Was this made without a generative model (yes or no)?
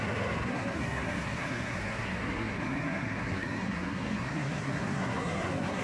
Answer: no